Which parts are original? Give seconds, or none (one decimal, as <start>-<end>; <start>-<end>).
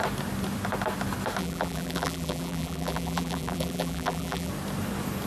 0.0-1.4; 4.5-5.3